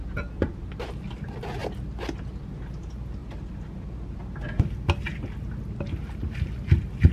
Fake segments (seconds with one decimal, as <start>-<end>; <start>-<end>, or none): 3.2-4.2

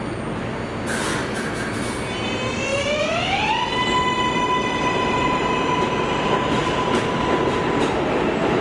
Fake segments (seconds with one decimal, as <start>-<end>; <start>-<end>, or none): 1.2-1.8

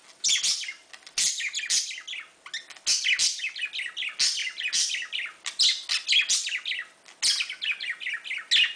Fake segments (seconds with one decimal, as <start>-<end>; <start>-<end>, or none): 0.0-1.8; 4.4-5.6

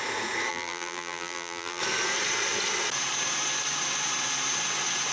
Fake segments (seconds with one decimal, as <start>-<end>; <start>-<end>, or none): 0.5-1.8

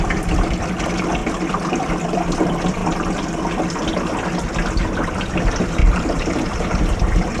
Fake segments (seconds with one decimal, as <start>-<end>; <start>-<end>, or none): 5.8-7.4